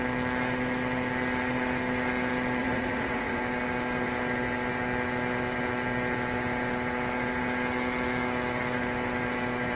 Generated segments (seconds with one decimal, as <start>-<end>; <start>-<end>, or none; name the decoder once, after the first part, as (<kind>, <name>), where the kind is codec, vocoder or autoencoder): 2.6-3.4 (vocoder, Vocos)